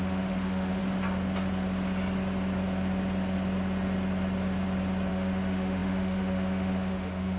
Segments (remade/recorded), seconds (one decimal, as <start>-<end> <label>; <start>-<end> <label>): 0.0-0.8 remade; 0.8-5.1 recorded; 5.1-7.4 remade